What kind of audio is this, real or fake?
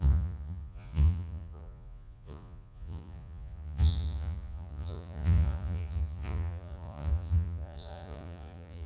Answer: fake